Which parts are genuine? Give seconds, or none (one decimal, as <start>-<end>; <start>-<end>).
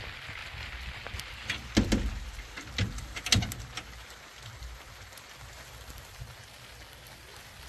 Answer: 0.0-7.7